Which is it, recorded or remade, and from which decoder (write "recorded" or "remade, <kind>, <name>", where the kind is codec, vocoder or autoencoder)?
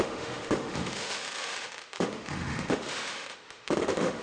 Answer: remade, autoencoder, DAC-VAE